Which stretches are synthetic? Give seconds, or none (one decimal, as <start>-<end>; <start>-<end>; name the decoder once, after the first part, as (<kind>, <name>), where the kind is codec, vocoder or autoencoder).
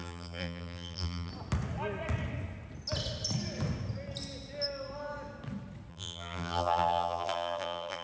0.0-1.3 (vocoder, BigVGAN v2); 5.9-8.0